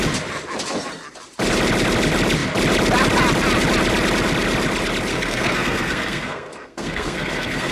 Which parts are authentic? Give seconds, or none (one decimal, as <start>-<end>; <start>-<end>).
0.0-5.1